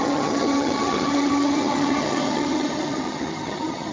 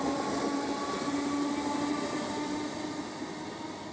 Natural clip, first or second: second